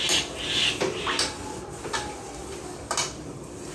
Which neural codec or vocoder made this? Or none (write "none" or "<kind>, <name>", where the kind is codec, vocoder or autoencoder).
none